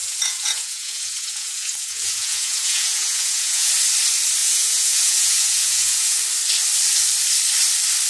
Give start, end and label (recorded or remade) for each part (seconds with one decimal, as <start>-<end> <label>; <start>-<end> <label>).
0.0-3.7 remade; 3.7-4.4 recorded; 4.4-6.2 remade; 6.2-8.1 recorded

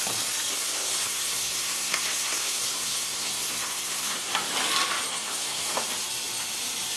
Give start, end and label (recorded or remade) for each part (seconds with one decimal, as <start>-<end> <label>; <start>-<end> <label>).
0.0-0.5 recorded; 0.5-4.3 remade; 4.3-5.1 recorded; 5.1-5.8 remade; 5.8-7.0 recorded

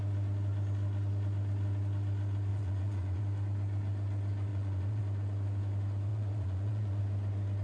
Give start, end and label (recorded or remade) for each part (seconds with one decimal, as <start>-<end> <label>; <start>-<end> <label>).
0.0-2.5 recorded; 2.5-3.2 remade; 3.2-4.5 recorded; 4.5-5.0 remade; 5.0-6.1 recorded; 6.1-7.0 remade; 7.0-7.6 recorded